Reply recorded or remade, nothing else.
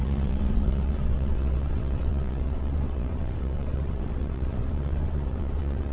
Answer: remade